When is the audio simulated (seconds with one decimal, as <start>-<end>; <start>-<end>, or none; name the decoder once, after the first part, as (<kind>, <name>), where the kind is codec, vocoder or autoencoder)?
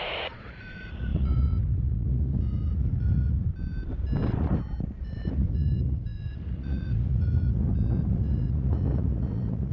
0.0-3.5 (vocoder, Vocos); 5.0-9.7